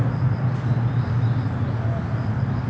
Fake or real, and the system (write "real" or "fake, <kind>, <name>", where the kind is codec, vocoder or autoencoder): real